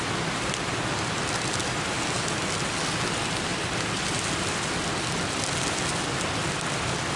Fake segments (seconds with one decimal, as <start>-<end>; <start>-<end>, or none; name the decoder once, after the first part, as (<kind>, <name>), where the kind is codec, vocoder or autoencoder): none